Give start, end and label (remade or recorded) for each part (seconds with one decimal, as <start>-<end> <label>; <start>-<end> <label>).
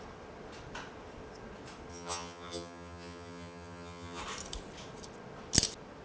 0.0-1.9 recorded; 1.9-4.2 remade; 4.2-6.0 recorded